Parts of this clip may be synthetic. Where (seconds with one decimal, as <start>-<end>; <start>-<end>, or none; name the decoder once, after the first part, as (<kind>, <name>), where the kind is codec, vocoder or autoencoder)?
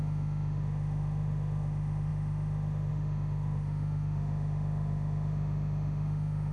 0.0-6.5 (autoencoder, DAC-VAE)